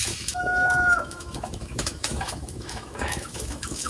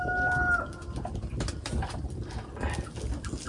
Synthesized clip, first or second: first